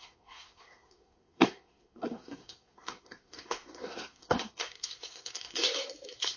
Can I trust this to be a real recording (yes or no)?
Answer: no